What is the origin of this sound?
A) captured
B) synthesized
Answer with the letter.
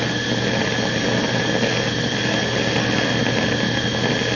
A